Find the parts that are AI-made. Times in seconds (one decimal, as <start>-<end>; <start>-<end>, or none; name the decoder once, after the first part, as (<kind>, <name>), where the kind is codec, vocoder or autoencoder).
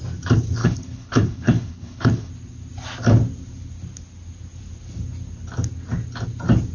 0.6-2.3 (codec, HILCodec)